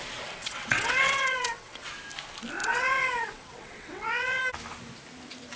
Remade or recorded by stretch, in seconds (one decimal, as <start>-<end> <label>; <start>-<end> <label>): 0.0-0.4 recorded; 0.4-1.9 remade; 1.9-2.6 recorded; 2.6-4.4 remade; 4.4-5.6 recorded